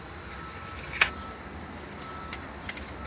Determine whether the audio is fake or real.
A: real